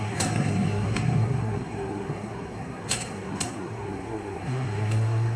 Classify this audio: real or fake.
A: fake